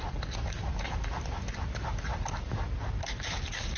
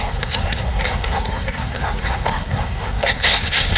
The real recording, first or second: first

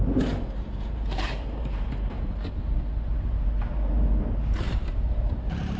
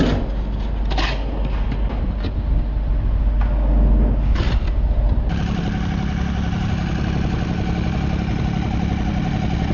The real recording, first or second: second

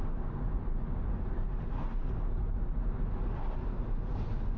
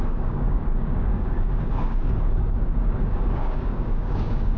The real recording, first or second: first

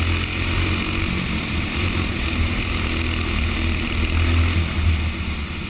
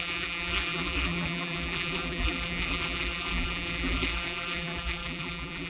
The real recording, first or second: first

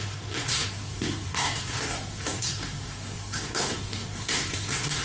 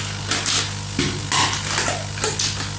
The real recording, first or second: second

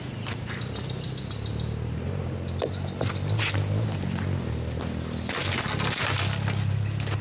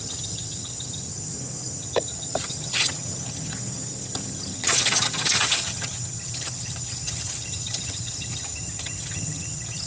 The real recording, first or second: first